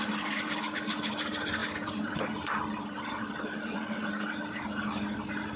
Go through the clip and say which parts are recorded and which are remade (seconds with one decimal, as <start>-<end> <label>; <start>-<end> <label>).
0.0-1.6 recorded; 1.6-4.1 remade; 4.1-5.6 recorded